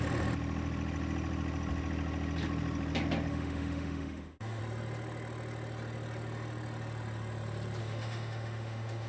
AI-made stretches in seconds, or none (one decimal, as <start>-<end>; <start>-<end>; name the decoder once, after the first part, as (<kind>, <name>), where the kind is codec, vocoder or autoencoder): 3.3-4.6 (autoencoder, DAC-VAE); 7.8-9.1